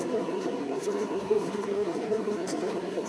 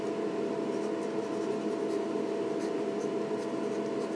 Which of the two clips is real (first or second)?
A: second